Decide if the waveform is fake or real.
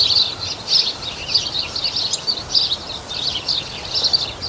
real